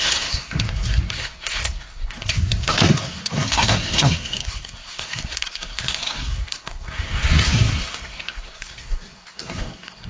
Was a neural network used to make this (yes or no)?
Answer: yes